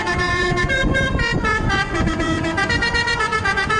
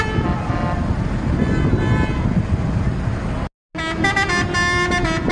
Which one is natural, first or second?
second